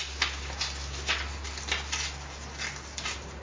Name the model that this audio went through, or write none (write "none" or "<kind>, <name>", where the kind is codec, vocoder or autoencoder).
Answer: none